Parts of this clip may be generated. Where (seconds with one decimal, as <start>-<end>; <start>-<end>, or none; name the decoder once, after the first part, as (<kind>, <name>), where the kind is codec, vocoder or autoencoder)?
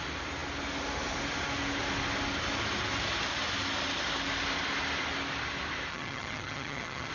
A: 5.9-7.1 (vocoder, HiFi-GAN)